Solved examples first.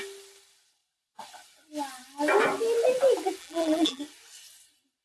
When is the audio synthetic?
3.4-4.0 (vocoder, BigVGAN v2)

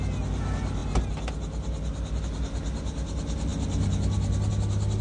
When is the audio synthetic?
none

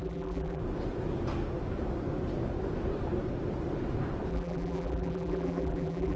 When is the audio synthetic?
0.0-0.6 (vocoder, BigVGAN v2); 4.3-6.2

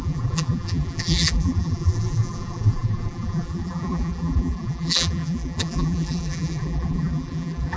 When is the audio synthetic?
0.0-7.8 (vocoder, BigVGAN v2)

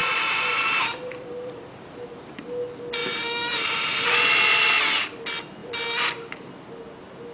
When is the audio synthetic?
0.0-2.4 (vocoder, BigVGAN v2); 3.0-3.9; 5.6-6.5

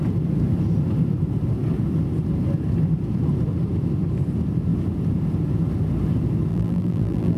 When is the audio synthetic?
6.5-7.4 (vocoder, BigVGAN v2)

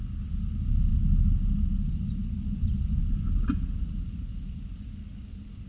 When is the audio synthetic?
none

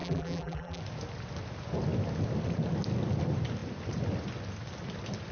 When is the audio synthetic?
0.0-0.8 (vocoder, BigVGAN v2)